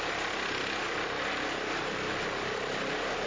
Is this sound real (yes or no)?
yes